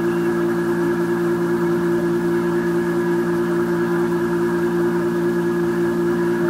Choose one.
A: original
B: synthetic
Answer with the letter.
A